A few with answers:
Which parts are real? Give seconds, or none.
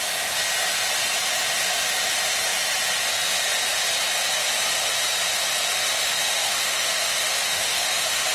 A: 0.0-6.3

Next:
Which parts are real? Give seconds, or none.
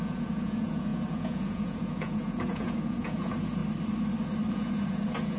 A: 3.6-4.5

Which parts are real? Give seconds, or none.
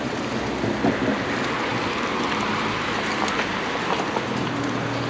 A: 0.0-5.1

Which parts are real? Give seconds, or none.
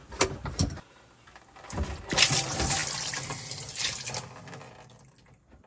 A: 0.0-5.7